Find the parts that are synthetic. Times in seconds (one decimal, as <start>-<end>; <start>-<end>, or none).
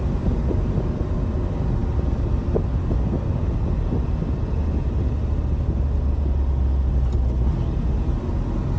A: none